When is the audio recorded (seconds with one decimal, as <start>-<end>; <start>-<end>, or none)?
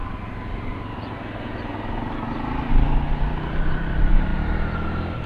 0.0-5.3